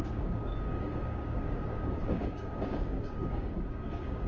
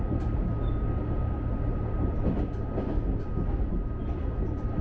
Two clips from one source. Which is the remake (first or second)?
first